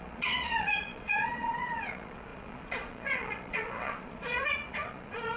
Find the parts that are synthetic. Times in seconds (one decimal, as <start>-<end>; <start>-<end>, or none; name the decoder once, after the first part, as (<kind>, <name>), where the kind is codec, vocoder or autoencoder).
0.0-5.4 (vocoder, Vocos)